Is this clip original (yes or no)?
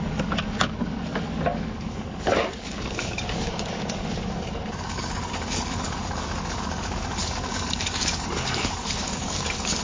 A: no